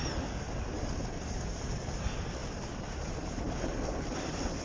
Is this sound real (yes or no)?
yes